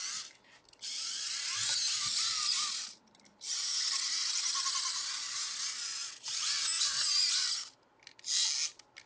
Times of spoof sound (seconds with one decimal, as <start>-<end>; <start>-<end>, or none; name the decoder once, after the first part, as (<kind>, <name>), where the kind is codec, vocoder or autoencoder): none